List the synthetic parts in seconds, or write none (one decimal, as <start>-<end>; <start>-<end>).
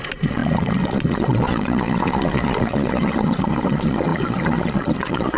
0.0-5.4